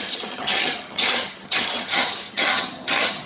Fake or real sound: fake